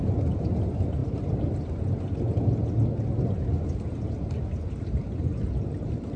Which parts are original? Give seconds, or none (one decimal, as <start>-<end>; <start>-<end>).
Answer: 0.0-6.2